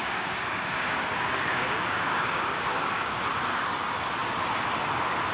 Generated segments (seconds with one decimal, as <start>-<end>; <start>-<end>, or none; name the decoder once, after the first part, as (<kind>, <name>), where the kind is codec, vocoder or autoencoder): 0.0-3.2 (codec, DAC)